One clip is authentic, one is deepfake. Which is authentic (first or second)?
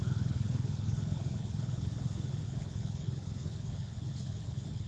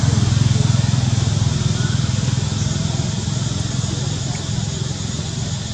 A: second